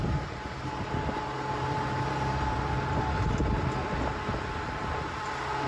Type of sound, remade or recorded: recorded